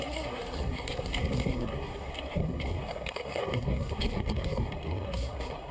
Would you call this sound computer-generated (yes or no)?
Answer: yes